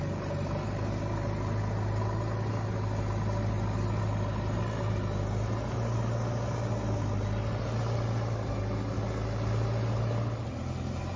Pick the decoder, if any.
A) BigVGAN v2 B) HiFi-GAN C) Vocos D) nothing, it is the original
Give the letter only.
D